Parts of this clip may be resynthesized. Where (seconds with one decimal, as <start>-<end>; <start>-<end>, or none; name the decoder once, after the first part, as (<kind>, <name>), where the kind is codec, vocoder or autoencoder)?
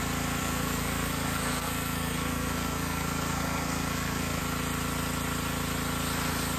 0.4-4.4 (codec, SNAC)